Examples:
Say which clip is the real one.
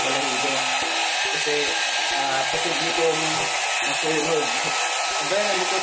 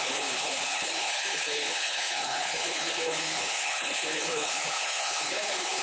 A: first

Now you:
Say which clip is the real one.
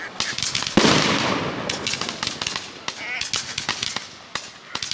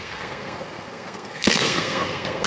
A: first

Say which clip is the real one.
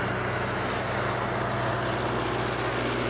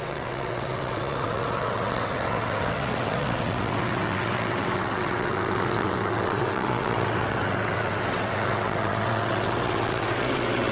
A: first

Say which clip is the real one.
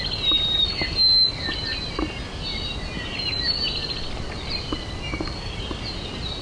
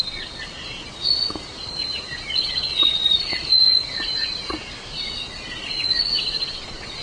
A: first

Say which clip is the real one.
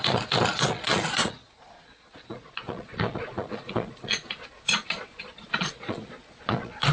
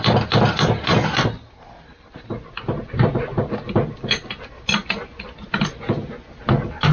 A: second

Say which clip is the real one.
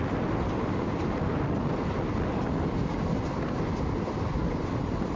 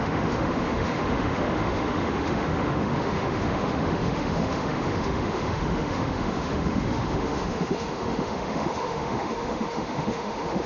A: first